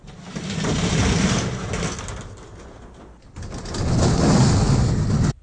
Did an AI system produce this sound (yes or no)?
no